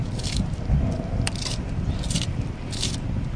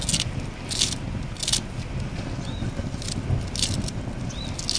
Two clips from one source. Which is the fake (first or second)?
first